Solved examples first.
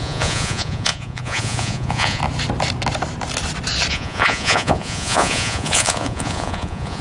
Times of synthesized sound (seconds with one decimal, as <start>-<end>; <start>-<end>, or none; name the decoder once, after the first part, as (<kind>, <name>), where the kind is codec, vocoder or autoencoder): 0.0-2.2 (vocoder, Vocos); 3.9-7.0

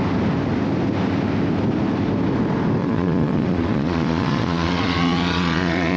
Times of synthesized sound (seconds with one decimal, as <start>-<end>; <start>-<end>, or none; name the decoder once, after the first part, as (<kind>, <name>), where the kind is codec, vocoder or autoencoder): 2.8-6.0 (vocoder, Vocos)

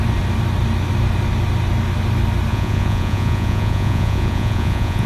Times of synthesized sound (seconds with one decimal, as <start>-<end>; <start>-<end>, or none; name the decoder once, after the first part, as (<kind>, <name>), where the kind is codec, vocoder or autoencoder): 2.5-5.1 (vocoder, Vocos)

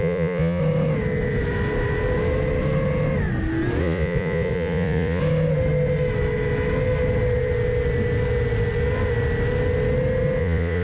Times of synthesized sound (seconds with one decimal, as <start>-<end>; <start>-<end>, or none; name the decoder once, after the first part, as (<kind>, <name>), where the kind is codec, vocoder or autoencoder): 0.0-0.6 (vocoder, Vocos); 3.8-5.2; 10.4-10.8